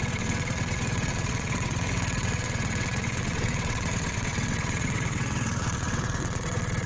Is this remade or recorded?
remade